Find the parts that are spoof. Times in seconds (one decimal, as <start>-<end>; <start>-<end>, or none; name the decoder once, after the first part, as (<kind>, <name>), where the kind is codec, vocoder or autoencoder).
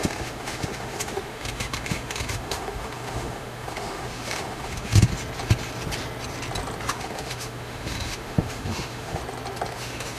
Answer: 0.0-5.1 (autoencoder, DAC-VAE); 6.9-9.2; 9.7-10.2